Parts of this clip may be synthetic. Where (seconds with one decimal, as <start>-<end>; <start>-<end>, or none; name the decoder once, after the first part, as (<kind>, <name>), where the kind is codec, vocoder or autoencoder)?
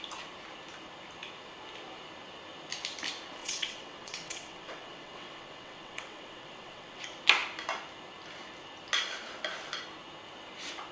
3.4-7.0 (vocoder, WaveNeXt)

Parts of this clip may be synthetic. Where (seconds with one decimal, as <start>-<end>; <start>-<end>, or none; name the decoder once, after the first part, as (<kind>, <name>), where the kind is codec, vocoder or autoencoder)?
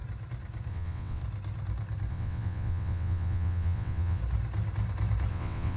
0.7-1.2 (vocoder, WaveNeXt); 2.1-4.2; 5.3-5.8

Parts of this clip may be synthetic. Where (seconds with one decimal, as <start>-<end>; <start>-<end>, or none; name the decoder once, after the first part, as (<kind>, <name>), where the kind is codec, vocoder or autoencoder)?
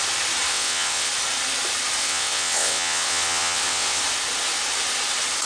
0.5-1.1 (vocoder, WaveNeXt); 2.0-4.0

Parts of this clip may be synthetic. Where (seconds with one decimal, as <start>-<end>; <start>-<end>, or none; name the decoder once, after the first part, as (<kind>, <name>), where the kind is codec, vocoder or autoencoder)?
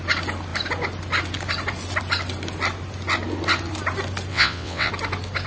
4.3-4.9 (vocoder, WaveNeXt)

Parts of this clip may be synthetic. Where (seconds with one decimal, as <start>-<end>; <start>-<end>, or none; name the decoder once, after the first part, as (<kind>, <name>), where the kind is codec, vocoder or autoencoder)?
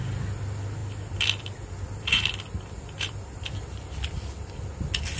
none